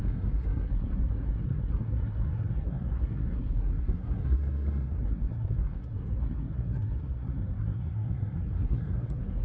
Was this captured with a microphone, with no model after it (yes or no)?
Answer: no